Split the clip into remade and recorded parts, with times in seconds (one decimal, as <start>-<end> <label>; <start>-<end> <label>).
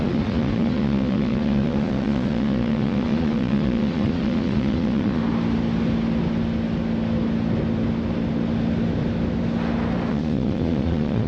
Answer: 0.0-5.2 remade; 5.2-10.1 recorded; 10.1-11.3 remade